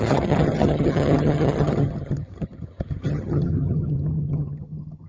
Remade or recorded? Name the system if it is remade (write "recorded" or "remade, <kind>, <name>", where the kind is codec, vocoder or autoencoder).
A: remade, vocoder, HiFi-GAN